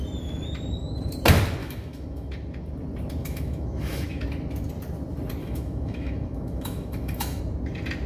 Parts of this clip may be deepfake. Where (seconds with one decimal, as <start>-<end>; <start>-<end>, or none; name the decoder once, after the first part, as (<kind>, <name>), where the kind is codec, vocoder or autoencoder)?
1.6-2.3 (autoencoder, DAC-VAE); 3.2-4.2; 5.4-7.4